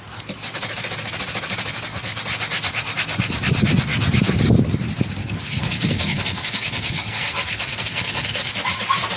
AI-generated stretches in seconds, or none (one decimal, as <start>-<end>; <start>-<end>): 5.2-8.5